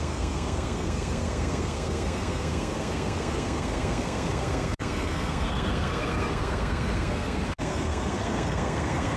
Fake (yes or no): yes